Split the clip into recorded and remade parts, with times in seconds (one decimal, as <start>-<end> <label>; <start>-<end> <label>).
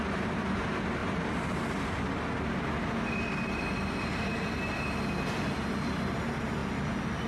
0.0-7.3 recorded